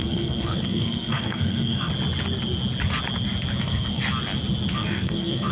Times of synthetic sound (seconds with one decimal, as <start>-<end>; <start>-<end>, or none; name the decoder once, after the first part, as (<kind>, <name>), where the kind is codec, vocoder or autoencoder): 0.0-1.9 (codec, SNAC); 3.6-4.0; 4.7-5.5